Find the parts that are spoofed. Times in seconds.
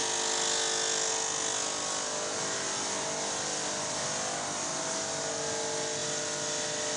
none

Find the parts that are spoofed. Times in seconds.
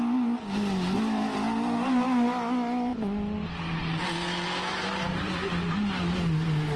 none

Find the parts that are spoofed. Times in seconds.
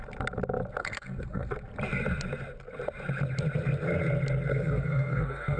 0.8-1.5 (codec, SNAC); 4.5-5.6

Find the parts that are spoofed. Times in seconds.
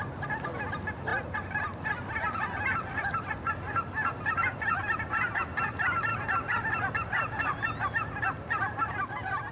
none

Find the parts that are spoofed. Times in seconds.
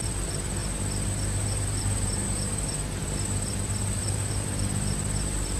0.6-4.0 (vocoder, BigVGAN v2)